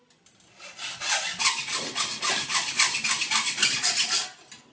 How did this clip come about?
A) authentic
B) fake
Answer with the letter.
A